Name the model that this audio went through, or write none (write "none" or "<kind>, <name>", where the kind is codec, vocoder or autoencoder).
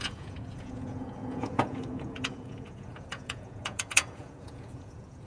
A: vocoder, Vocos